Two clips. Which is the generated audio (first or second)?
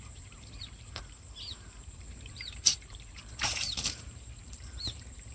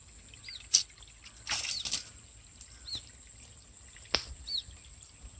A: first